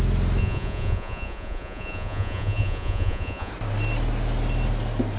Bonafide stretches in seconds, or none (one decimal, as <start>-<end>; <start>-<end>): 0.0-0.4; 3.5-5.2